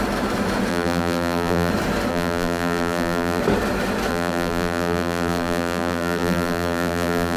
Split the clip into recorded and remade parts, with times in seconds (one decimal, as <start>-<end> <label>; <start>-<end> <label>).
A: 0.0-0.7 recorded; 0.7-1.7 remade; 1.7-2.1 recorded; 2.1-3.4 remade; 3.4-4.1 recorded; 4.1-7.4 remade